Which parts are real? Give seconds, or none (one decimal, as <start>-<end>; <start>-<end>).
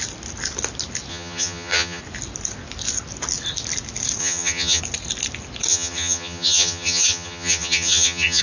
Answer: 0.0-1.1; 2.0-4.2; 4.8-5.7